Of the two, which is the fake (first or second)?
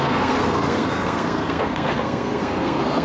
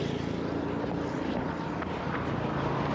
first